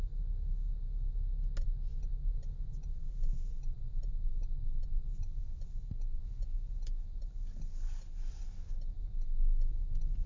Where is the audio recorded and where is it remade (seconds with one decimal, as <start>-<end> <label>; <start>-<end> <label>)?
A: 0.0-6.2 recorded; 6.2-7.0 remade; 7.0-10.3 recorded